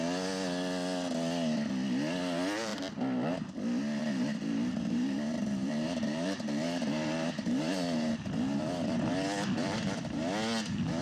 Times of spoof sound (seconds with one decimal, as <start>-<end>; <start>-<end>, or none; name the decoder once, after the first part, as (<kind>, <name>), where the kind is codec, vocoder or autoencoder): 4.0-9.1 (vocoder, BigVGAN v2); 9.6-10.2